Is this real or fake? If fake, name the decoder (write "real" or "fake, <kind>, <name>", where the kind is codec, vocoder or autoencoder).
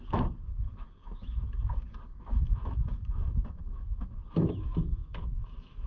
fake, autoencoder, DAC-VAE